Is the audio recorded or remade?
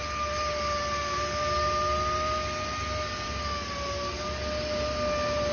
recorded